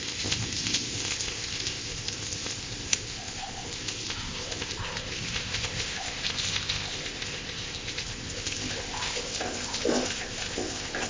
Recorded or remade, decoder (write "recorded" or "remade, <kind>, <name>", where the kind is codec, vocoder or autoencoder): remade, codec, ZipCodec